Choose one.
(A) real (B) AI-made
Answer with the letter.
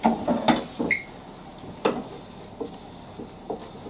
A